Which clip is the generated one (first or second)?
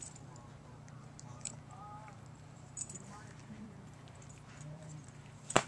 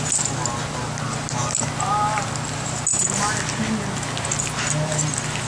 first